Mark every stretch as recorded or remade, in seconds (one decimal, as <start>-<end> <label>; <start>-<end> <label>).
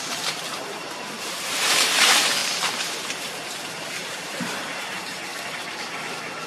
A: 0.0-6.5 remade